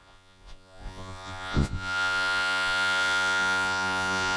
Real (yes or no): no